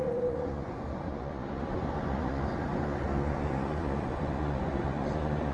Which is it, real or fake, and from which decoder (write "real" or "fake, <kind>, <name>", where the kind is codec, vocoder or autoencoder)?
fake, vocoder, Vocos